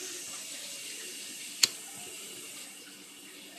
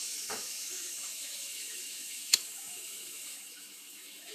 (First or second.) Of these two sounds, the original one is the first